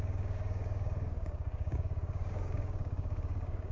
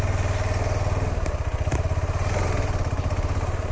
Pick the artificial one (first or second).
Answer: first